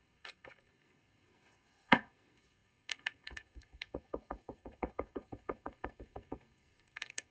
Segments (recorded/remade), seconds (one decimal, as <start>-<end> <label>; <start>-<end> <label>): 0.0-7.3 remade